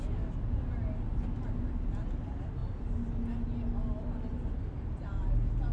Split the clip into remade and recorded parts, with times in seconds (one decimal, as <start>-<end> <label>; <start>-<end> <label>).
0.0-5.7 recorded